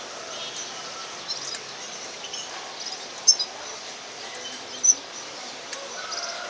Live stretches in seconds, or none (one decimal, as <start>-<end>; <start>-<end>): 0.0-6.5